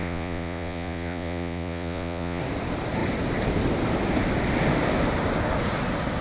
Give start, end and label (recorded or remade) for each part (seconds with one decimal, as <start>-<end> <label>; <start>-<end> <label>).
0.0-2.4 remade; 2.4-6.2 recorded